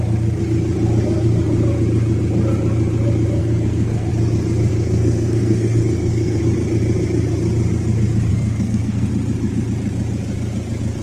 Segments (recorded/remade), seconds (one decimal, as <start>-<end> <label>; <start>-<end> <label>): 0.0-3.4 recorded; 3.4-4.1 remade; 4.1-4.7 recorded; 4.7-6.4 remade; 6.4-8.3 recorded; 8.3-9.1 remade; 9.1-11.0 recorded